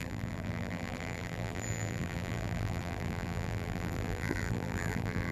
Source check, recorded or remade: remade